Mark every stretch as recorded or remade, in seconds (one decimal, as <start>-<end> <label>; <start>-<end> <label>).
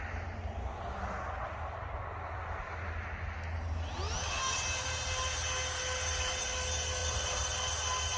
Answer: 0.0-8.2 recorded